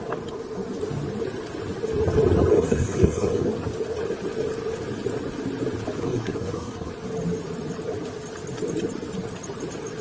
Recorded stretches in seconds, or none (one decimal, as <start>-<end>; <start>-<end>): 0.0-2.5; 3.5-6.0; 6.9-10.0